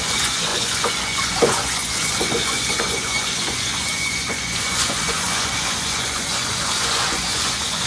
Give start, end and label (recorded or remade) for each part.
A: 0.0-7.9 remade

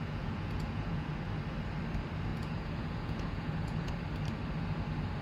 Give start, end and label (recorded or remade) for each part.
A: 0.0-1.1 remade; 1.1-2.3 recorded; 2.3-3.9 remade; 3.9-5.2 recorded

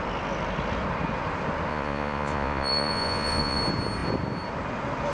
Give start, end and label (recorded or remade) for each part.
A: 0.0-1.7 recorded; 1.7-3.6 remade; 3.6-5.1 recorded

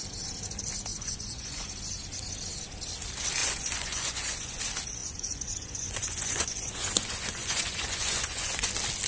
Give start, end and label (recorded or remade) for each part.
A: 0.0-0.9 recorded; 0.9-1.7 remade; 1.7-3.4 recorded; 3.4-4.6 remade; 4.6-5.0 recorded; 5.0-8.7 remade; 8.7-9.1 recorded

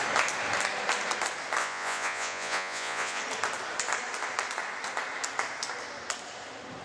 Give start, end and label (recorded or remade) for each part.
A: 0.0-1.6 recorded; 1.6-3.2 remade; 3.2-6.8 recorded

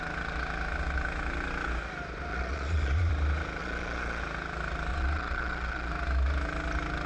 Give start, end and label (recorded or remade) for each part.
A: 0.0-2.3 recorded; 2.3-3.1 remade; 3.1-3.6 recorded; 3.6-4.2 remade; 4.2-4.9 recorded; 4.9-5.9 remade; 5.9-7.1 recorded

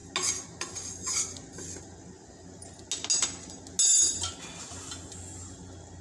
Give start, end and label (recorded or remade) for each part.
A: 0.0-6.0 recorded